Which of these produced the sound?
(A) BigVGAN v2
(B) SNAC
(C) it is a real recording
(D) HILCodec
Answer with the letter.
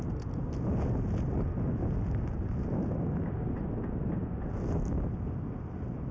C